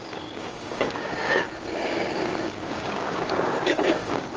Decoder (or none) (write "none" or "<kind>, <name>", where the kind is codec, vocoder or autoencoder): codec, DAC